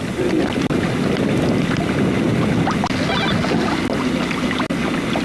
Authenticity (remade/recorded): recorded